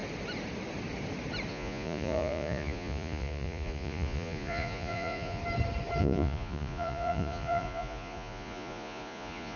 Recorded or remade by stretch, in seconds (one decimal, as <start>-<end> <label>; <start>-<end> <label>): 0.0-1.5 recorded; 1.5-5.4 remade; 5.4-6.0 recorded; 6.0-9.6 remade